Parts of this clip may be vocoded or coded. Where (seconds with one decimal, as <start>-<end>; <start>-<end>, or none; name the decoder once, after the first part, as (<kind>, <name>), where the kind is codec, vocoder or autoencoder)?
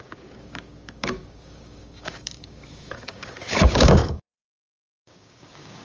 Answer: 0.0-5.8 (codec, DAC)